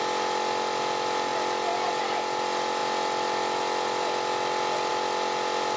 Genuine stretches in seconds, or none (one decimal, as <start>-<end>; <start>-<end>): 0.0-5.8